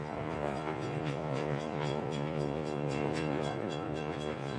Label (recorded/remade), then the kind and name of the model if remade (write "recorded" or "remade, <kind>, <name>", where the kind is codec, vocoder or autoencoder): remade, vocoder, Vocos